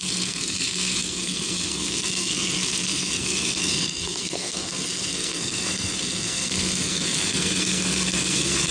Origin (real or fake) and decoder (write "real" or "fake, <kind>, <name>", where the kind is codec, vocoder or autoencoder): fake, codec, SNAC